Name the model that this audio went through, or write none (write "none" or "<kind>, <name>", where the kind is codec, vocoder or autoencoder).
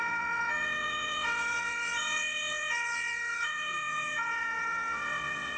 vocoder, WaveNeXt